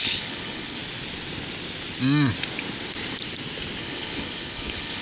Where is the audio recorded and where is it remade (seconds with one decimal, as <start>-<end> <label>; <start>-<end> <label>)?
0.0-0.8 remade; 0.8-3.8 recorded; 3.8-5.0 remade